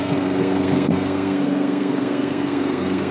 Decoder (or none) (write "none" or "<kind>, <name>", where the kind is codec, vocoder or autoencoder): codec, SNAC